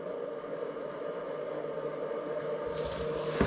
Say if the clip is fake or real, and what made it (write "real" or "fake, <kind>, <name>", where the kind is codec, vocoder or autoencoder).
real